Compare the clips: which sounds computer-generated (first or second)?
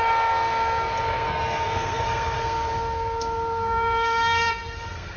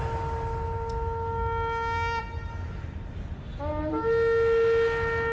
first